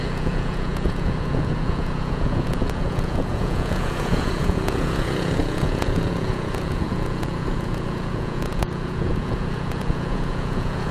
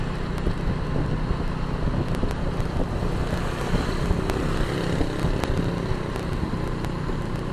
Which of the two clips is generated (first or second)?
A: first